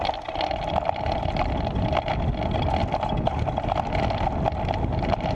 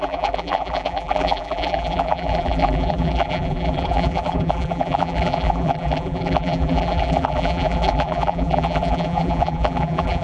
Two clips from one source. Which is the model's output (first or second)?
second